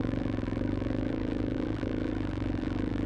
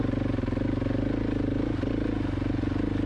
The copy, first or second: first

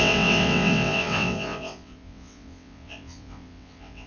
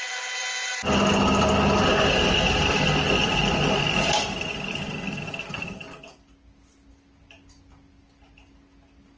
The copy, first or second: first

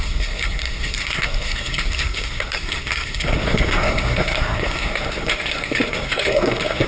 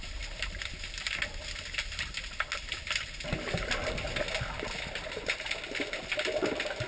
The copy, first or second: first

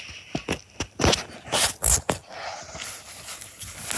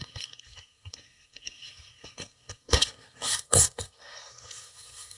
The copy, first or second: second